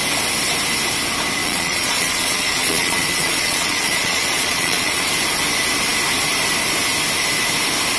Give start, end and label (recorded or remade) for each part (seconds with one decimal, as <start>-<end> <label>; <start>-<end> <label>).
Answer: 0.0-1.4 recorded; 1.4-5.1 remade; 5.1-8.0 recorded